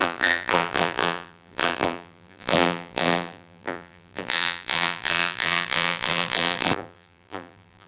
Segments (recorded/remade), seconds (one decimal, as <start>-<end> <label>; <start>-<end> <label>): 0.0-7.9 remade